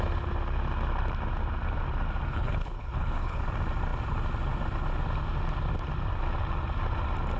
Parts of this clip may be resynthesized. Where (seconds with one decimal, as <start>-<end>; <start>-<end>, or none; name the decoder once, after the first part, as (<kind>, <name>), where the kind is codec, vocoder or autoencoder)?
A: 2.3-3.4 (codec, HILCodec)